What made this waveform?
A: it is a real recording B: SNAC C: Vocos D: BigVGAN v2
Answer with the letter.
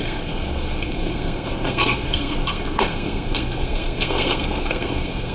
B